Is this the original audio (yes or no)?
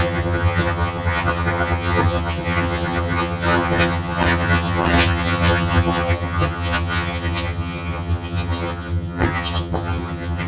no